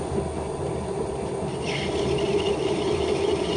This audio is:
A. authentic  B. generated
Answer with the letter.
B